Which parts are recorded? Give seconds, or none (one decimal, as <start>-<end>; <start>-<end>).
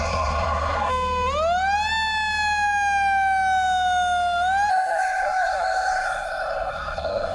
0.9-4.7